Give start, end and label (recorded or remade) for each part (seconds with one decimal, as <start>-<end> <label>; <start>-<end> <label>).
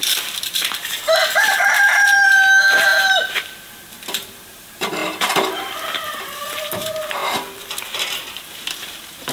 0.0-9.3 remade